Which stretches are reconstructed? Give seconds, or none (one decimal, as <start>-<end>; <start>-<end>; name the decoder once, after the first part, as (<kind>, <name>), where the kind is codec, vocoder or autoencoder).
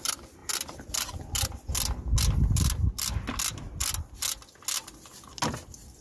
none